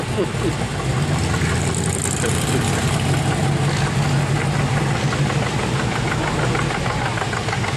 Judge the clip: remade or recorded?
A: recorded